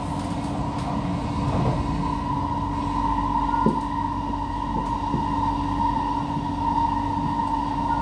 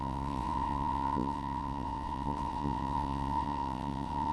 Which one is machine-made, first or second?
second